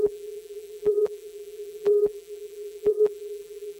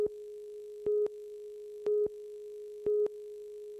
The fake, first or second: first